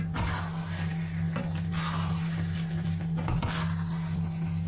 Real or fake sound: real